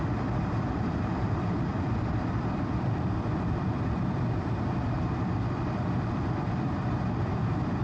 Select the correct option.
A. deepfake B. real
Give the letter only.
A